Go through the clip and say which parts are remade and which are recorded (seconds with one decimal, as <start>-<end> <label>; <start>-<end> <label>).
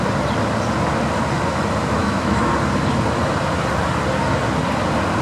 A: 0.0-2.0 recorded; 2.0-2.5 remade; 2.5-5.2 recorded